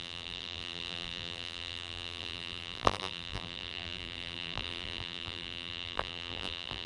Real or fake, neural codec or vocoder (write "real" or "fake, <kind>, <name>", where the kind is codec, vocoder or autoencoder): fake, vocoder, BigVGAN v2